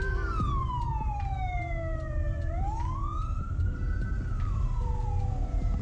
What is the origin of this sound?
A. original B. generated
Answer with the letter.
B